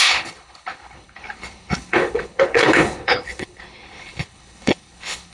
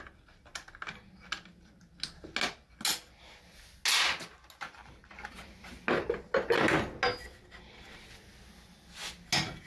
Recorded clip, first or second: second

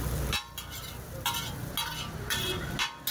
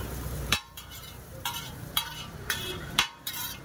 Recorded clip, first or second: first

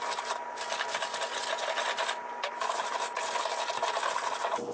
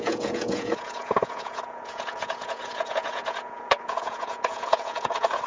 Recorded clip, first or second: first